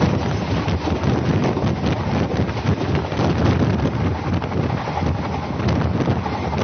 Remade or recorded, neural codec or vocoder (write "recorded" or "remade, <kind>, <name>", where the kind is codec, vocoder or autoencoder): recorded